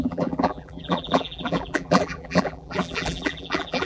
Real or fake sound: fake